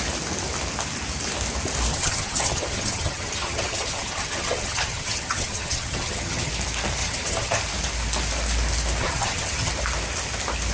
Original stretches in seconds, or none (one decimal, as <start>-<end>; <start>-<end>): 0.0-1.9; 6.5-7.0; 7.6-9.0; 9.7-10.7